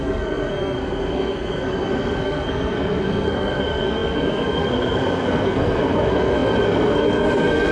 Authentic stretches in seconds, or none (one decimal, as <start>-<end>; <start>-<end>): none